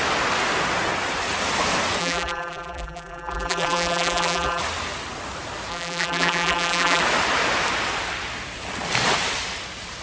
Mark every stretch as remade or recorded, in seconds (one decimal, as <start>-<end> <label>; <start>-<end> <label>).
0.0-2.0 recorded; 2.0-4.6 remade; 4.6-5.7 recorded; 5.7-7.0 remade; 7.0-10.0 recorded